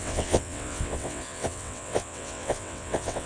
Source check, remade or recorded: remade